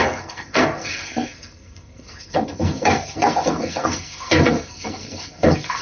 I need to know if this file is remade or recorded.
remade